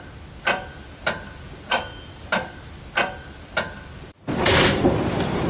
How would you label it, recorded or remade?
remade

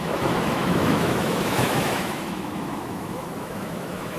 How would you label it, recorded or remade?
remade